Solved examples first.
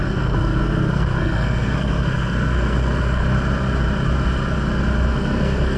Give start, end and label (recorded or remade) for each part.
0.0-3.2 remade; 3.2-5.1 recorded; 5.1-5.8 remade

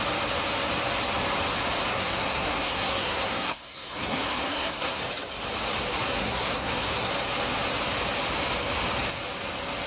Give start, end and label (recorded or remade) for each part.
0.0-1.9 recorded; 1.9-5.0 remade; 5.0-6.2 recorded; 6.2-7.1 remade; 7.1-9.9 recorded

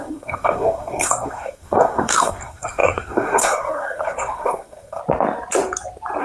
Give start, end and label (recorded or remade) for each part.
0.0-5.0 remade; 5.0-6.2 recorded

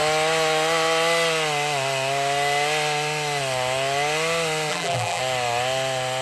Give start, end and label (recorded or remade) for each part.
0.0-4.7 recorded; 4.7-5.2 remade; 5.2-6.2 recorded

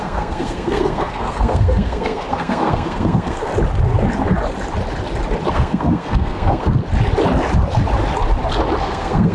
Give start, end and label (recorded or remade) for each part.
0.0-3.5 remade; 3.5-5.5 recorded; 5.5-6.8 remade; 6.8-8.8 recorded; 8.8-9.3 remade

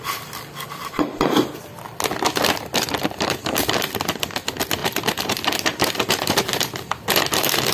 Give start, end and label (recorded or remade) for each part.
0.0-0.8 recorded; 0.8-1.5 remade; 1.5-4.8 recorded; 4.8-6.9 remade; 6.9-7.7 recorded

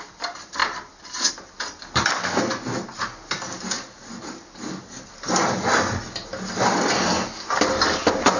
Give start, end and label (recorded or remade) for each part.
0.0-8.4 recorded